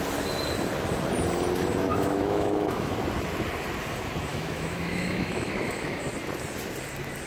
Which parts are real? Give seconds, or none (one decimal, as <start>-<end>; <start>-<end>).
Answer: 0.0-1.9; 2.9-4.3; 6.0-7.3